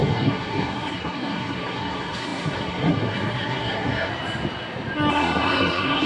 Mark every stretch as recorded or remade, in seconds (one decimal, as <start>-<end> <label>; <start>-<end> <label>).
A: 0.0-4.1 remade; 4.1-5.1 recorded; 5.1-6.1 remade